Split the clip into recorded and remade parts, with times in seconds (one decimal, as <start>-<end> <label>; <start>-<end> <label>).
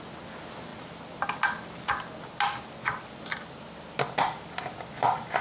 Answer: 0.0-5.4 recorded